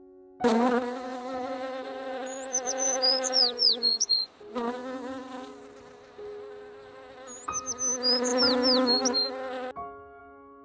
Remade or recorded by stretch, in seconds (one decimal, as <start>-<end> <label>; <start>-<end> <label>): 0.0-1.1 recorded; 1.1-4.3 remade; 4.3-10.6 recorded